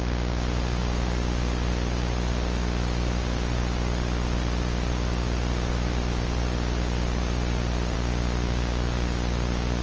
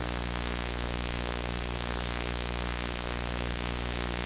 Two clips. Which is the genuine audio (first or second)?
first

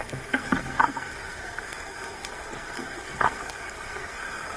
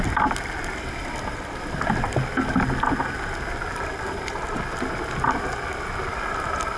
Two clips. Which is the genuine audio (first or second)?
second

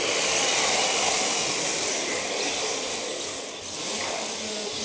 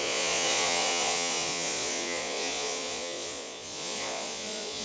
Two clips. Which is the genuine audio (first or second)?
first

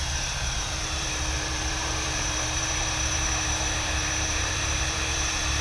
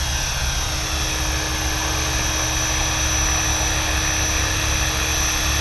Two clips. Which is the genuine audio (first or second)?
second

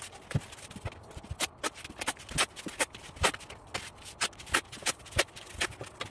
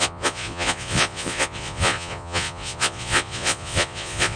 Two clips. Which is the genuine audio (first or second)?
first